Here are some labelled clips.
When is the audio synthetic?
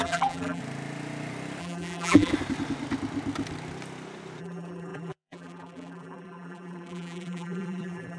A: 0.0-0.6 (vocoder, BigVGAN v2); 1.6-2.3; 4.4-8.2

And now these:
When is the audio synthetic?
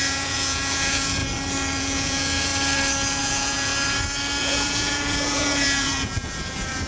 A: 0.0-1.2 (vocoder, Vocos); 1.8-2.5; 3.2-3.7; 4.4-6.9